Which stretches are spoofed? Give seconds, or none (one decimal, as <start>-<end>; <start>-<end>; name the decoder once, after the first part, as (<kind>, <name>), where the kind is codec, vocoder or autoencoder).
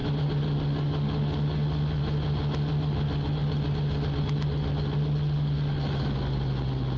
none